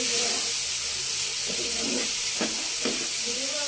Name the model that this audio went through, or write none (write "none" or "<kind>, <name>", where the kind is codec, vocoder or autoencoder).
none